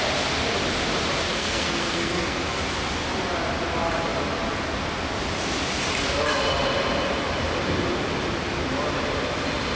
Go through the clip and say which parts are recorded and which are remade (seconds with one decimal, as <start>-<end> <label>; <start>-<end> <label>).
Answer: 0.0-1.3 recorded; 1.3-2.6 remade; 2.6-9.8 recorded